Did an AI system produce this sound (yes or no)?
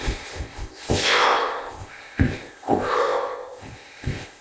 yes